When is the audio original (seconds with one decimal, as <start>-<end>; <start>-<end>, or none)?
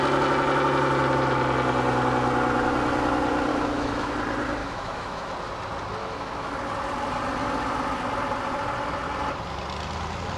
0.0-3.5; 4.1-4.6; 5.3-6.0; 6.5-10.4